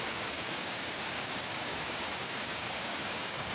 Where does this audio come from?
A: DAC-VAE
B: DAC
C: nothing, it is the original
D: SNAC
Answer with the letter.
B